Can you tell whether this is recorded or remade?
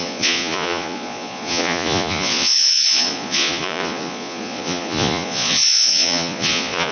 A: remade